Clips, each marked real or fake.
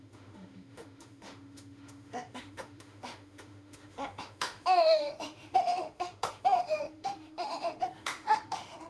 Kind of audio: fake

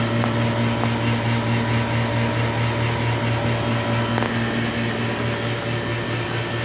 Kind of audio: real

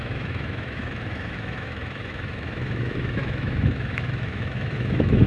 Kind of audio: fake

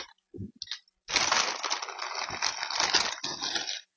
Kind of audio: real